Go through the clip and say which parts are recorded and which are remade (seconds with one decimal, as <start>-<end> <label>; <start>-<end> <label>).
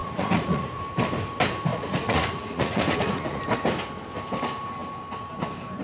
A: 0.0-0.8 remade; 0.8-1.7 recorded; 1.7-3.4 remade; 3.4-5.8 recorded